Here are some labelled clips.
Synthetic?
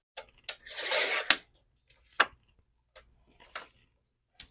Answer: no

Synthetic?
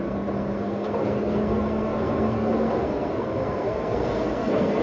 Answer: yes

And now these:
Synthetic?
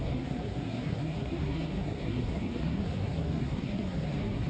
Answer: yes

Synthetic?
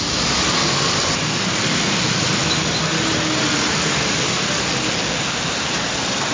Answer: no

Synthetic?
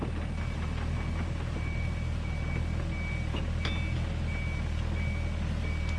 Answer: no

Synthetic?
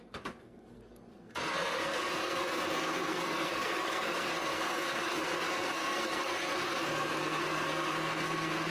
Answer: yes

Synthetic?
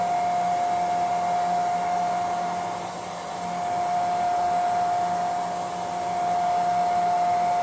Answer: no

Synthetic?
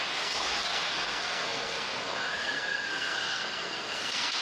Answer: yes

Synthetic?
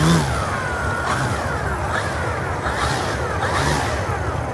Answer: no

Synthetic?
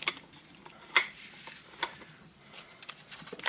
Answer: no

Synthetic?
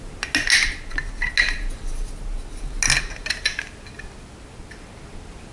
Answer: no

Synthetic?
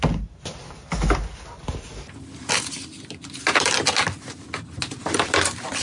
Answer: no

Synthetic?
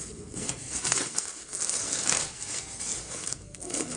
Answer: yes